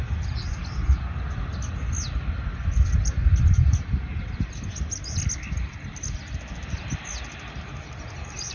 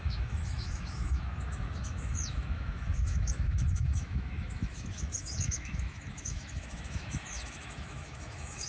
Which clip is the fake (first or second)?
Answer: second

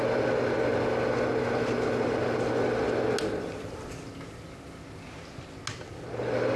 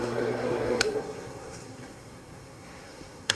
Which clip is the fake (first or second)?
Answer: second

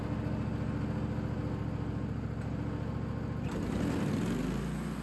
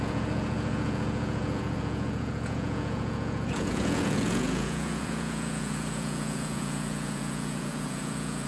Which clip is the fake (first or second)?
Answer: second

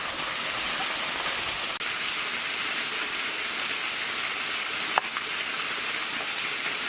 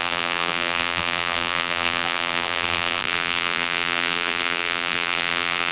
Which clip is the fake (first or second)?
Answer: second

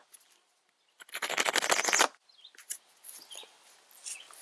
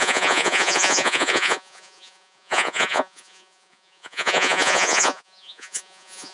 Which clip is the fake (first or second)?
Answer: second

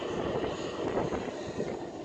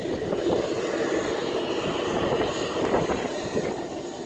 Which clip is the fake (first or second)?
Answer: second